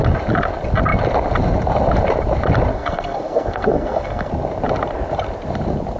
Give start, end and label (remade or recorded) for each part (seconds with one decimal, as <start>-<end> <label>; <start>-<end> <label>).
0.0-2.7 recorded; 2.7-4.3 remade; 4.3-6.0 recorded